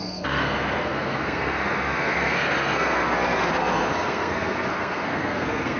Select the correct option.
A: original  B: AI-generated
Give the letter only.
B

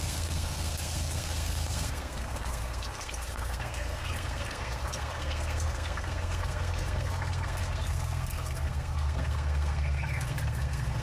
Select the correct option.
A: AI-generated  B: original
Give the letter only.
A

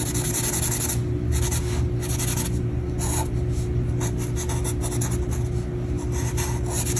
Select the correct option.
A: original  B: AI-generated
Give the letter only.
A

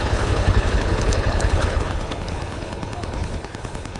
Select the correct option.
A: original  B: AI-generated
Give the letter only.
B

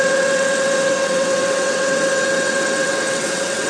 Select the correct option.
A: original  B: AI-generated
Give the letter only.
B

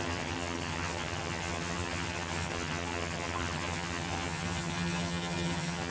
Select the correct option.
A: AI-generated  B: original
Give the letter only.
A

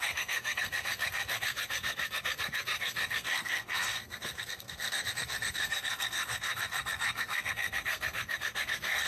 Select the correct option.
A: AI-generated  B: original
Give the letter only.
A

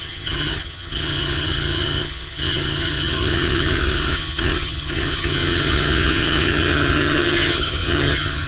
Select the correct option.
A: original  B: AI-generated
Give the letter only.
B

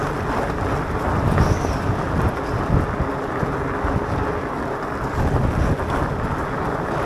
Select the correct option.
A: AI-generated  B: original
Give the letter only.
B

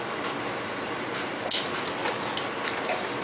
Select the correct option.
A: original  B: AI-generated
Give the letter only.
A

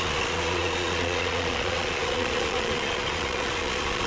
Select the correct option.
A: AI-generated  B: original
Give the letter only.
A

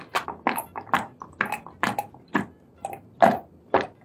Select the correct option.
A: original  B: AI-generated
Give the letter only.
A